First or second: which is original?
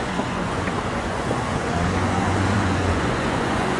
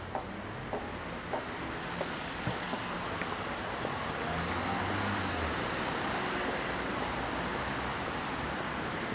second